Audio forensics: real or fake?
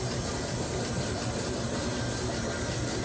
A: real